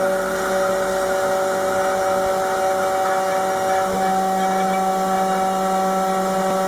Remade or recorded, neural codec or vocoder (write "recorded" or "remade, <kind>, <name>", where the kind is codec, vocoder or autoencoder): recorded